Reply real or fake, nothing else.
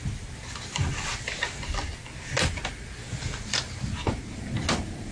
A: real